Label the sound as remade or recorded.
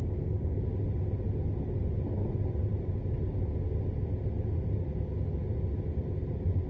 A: recorded